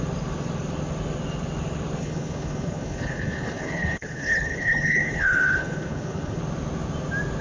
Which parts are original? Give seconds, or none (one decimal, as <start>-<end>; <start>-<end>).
0.0-2.0; 6.4-7.4